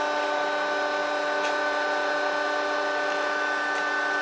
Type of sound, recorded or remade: recorded